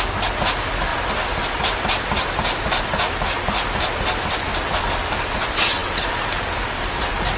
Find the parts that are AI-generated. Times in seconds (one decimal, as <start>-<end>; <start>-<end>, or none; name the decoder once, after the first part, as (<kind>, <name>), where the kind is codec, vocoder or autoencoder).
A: none